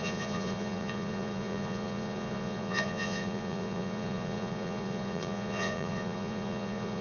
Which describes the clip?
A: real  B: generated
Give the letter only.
B